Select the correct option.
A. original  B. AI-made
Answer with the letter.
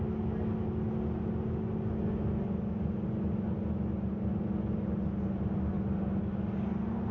A